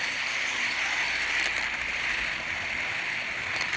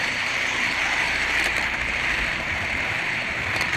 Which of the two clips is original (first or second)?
first